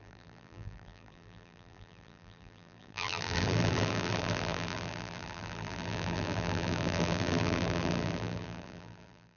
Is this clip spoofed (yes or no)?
yes